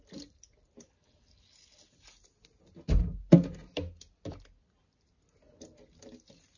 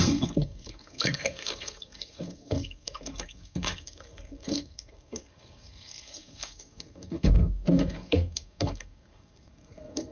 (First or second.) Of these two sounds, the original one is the first